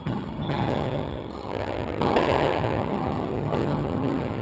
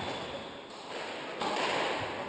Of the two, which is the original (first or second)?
second